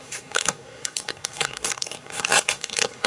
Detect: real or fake fake